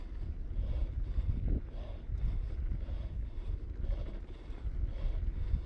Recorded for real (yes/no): yes